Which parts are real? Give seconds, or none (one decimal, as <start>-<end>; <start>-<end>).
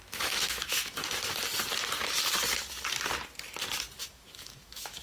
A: 1.0-4.0